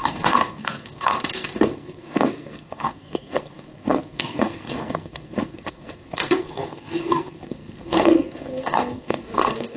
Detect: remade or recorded remade